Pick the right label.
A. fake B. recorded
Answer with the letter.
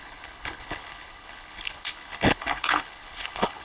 A